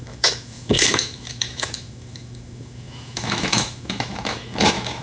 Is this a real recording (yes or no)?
no